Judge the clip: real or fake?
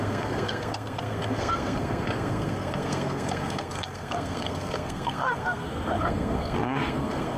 fake